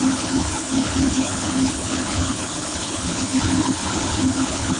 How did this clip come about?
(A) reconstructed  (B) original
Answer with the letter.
A